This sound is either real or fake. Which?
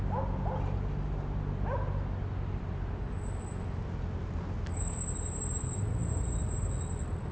real